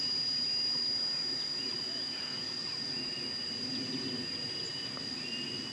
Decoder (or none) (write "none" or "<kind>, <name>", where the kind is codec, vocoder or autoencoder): none